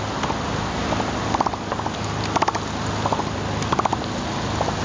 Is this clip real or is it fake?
real